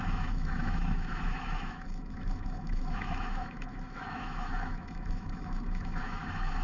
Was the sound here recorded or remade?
remade